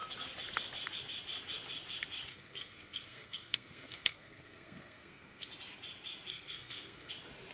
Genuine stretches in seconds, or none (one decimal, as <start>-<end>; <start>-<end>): 0.0-2.3; 5.5-6.3; 7.1-7.5